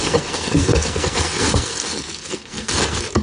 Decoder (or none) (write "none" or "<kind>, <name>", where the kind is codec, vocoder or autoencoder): codec, SNAC